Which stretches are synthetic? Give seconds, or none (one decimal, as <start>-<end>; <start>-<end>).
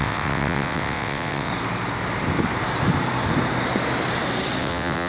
0.0-1.5; 4.6-5.1